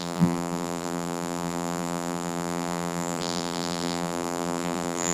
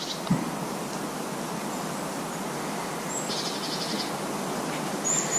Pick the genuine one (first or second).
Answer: second